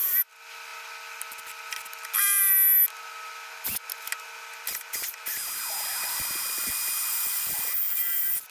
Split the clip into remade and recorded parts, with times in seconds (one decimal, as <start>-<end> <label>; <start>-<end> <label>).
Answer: 0.0-8.5 recorded